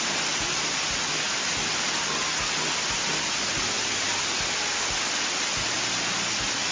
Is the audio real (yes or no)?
yes